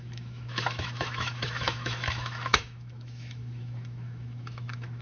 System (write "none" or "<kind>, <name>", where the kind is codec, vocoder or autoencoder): autoencoder, DAC-VAE